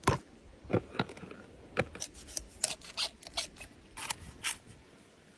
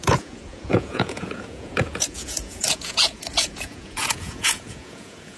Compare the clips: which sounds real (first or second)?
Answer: first